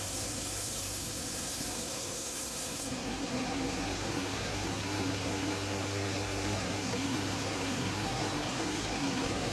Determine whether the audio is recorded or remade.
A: remade